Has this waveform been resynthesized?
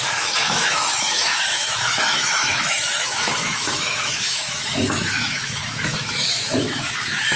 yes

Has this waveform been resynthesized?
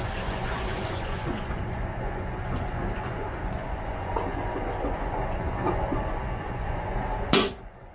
yes